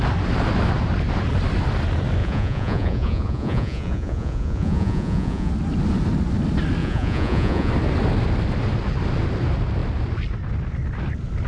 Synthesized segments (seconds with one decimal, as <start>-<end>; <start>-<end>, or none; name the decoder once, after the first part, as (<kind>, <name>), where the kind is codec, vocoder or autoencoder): 2.2-5.5 (vocoder, Vocos); 6.8-7.7